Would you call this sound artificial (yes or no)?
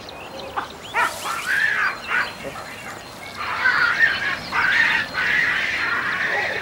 no